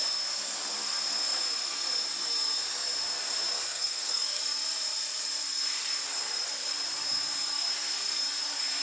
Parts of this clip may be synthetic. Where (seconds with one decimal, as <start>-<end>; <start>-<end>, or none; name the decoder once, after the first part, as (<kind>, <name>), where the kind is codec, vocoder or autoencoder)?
3.7-4.4 (codec, SNAC)